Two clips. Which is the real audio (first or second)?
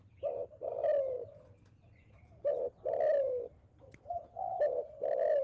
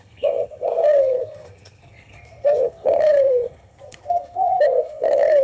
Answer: first